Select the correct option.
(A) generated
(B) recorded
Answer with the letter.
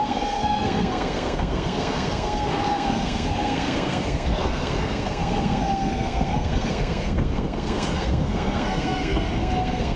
A